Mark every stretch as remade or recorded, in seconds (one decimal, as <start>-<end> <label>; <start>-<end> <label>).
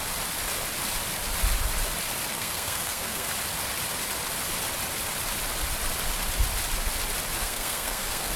0.0-2.3 recorded; 2.3-3.3 remade; 3.3-7.4 recorded; 7.4-8.4 remade